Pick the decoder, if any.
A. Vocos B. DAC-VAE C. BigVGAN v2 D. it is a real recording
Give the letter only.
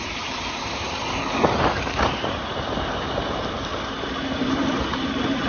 C